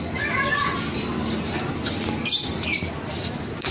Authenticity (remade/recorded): recorded